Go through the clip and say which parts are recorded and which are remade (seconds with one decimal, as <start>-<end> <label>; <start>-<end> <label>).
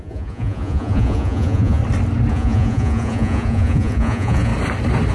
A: 0.0-1.8 remade; 1.8-2.3 recorded; 2.3-4.5 remade; 4.5-5.1 recorded